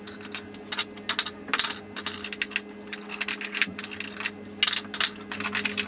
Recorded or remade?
recorded